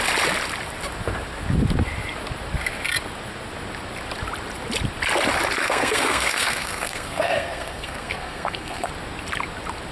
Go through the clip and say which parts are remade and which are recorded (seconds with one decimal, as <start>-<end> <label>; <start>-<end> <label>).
0.0-5.6 recorded; 5.6-8.9 remade; 8.9-9.9 recorded